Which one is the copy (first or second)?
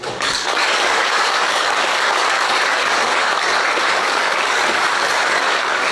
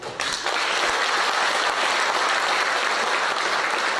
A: first